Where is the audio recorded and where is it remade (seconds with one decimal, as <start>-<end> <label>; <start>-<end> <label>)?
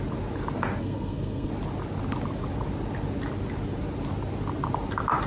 0.0-0.8 recorded; 0.8-1.5 remade; 1.5-5.3 recorded